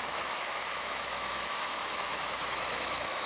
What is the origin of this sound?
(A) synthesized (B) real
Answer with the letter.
A